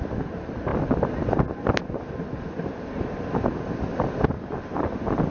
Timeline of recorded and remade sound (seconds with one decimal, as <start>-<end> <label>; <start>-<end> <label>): 0.0-5.3 recorded